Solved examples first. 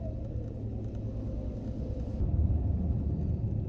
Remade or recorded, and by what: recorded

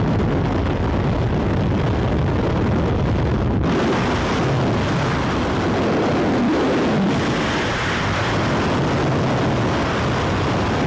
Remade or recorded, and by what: recorded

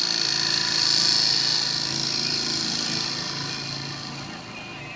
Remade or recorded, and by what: recorded